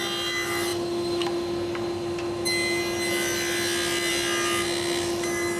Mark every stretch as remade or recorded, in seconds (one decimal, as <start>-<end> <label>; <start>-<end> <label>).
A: 0.0-5.6 recorded